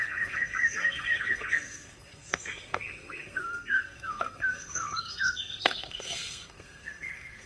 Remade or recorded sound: remade